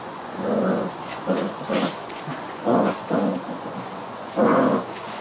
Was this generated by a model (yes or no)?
yes